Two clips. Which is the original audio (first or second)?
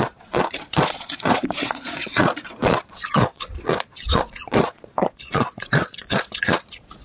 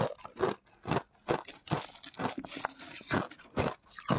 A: second